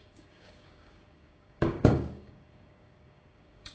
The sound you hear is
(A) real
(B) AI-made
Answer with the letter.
B